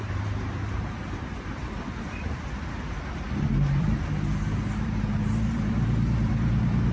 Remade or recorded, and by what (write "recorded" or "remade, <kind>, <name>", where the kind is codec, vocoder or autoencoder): remade, vocoder, BigVGAN v2